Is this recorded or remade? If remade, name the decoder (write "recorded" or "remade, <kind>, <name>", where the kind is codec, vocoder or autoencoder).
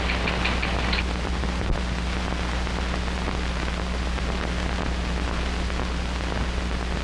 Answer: recorded